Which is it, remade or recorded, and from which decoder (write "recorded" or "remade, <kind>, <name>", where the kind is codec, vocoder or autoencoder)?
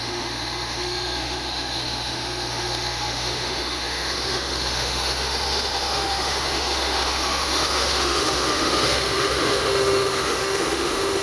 remade, autoencoder, DAC-VAE